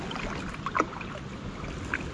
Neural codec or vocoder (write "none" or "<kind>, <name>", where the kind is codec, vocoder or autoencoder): none